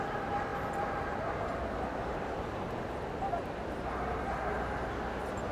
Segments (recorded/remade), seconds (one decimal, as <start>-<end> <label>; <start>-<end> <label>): 0.0-5.5 recorded